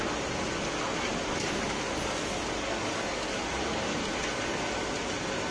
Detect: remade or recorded recorded